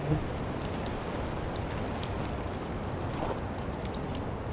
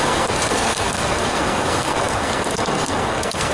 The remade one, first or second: second